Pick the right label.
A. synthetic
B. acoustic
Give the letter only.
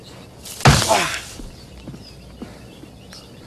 B